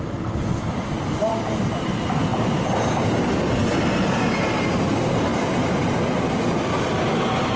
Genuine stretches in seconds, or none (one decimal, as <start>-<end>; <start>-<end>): 0.0-7.6